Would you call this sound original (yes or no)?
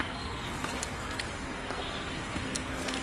no